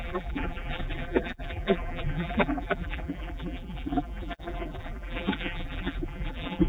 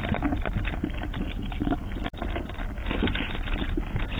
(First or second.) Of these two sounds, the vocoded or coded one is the first